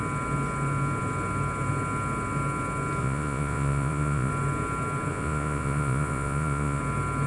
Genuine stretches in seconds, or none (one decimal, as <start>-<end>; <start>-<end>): 0.0-3.0; 4.3-5.1; 6.8-7.3